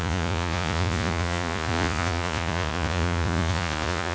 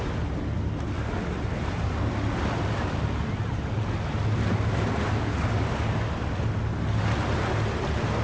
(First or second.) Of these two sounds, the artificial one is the first